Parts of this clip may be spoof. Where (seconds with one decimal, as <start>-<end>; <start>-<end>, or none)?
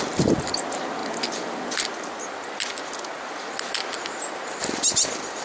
none